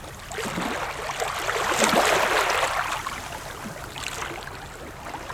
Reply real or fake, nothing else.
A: real